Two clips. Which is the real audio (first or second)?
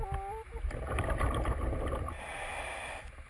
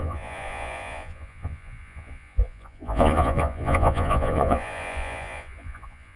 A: first